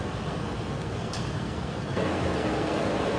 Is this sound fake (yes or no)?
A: yes